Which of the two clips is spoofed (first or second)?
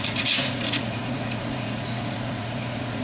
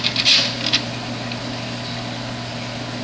first